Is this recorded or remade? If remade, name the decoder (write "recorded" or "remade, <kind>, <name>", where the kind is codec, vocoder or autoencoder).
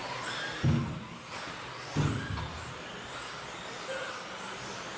recorded